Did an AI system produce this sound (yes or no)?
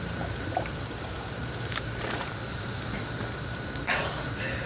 yes